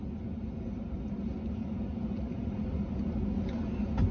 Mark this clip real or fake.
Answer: real